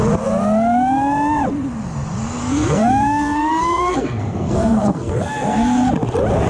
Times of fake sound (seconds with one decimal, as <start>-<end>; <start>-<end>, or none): 2.4-5.9